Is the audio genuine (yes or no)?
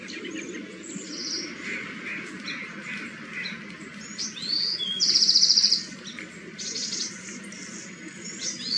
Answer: yes